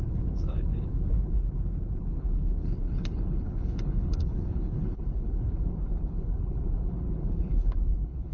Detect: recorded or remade remade